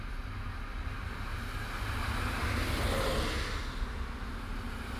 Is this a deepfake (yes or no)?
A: no